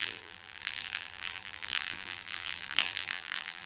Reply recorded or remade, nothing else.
remade